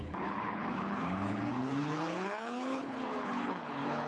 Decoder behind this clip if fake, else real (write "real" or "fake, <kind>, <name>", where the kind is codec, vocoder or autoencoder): fake, codec, HILCodec